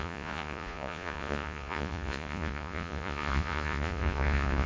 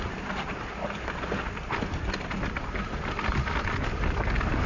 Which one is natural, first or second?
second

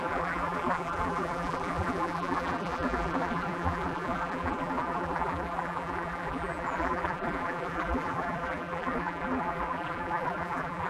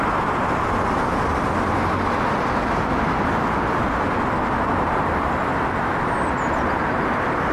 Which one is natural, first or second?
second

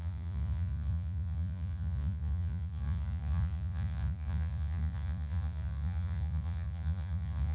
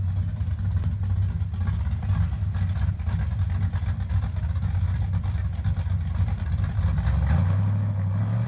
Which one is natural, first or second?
second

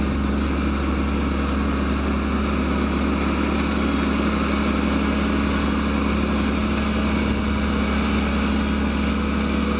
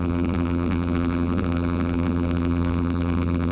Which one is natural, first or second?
first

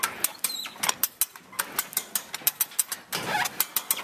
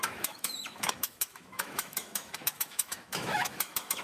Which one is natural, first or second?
first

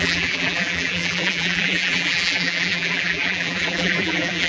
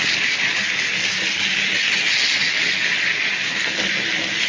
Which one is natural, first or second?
second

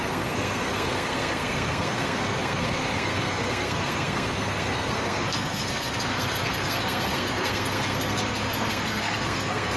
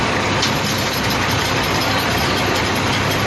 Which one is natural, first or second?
second